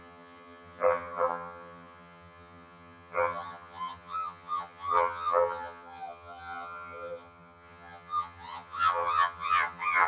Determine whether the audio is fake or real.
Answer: fake